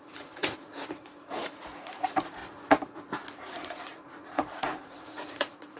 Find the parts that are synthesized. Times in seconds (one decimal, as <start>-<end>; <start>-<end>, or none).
0.0-2.4; 3.4-5.8